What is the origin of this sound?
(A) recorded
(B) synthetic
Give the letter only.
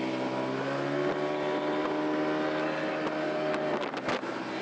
A